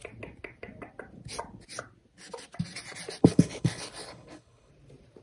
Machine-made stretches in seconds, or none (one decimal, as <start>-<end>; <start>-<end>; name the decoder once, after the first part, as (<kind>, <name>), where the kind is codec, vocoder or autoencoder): 3.2-4.7 (codec, HILCodec)